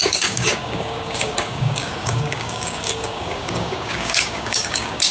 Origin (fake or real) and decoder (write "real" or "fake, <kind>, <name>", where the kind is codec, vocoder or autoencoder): fake, codec, DAC